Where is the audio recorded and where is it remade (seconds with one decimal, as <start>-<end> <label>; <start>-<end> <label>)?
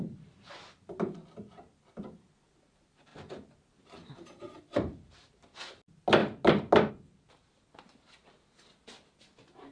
0.0-9.7 recorded